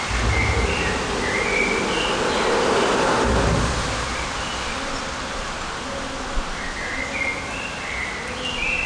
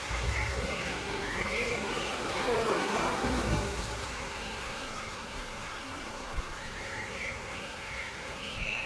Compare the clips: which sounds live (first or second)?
first